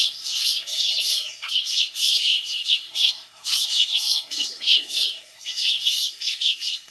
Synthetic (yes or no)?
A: yes